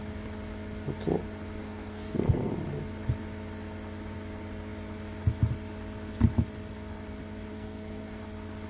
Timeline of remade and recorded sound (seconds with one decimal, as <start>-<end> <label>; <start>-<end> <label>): 0.0-1.6 recorded; 1.6-2.5 remade; 2.5-7.5 recorded; 7.5-8.2 remade; 8.2-8.7 recorded

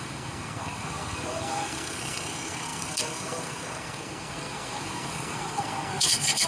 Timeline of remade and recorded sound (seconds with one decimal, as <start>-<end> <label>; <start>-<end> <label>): 0.0-6.5 remade

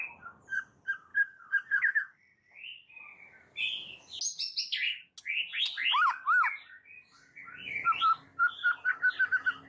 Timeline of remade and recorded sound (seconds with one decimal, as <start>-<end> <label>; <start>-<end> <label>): 0.0-9.7 recorded

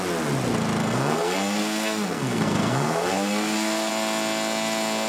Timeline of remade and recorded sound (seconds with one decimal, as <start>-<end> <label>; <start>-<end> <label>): 0.0-0.8 recorded; 0.8-3.9 remade; 3.9-5.1 recorded

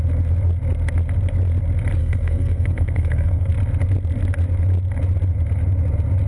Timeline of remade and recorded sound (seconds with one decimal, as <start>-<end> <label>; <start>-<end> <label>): 0.0-2.0 recorded; 2.0-3.5 remade; 3.5-6.3 recorded